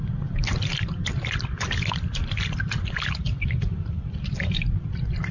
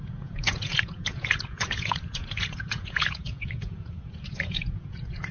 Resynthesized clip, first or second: second